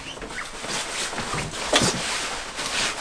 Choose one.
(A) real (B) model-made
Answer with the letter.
A